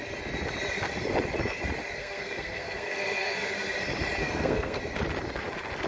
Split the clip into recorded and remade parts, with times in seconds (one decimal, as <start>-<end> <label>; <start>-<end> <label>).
0.0-2.0 recorded; 2.0-3.5 remade; 3.5-4.2 recorded; 4.2-4.8 remade; 4.8-5.9 recorded